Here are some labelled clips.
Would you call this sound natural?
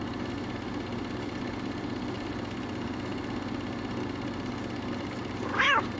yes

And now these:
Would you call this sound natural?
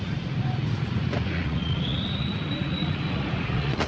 no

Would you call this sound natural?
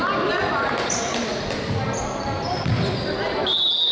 yes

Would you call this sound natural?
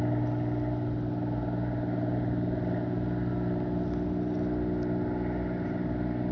yes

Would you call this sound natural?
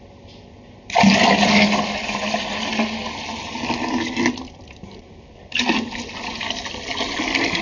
yes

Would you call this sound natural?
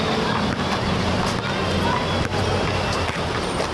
yes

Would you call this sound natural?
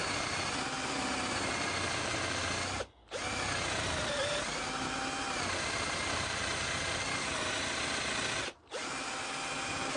yes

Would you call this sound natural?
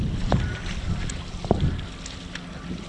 yes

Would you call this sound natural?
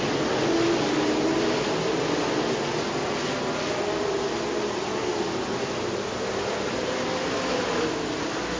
yes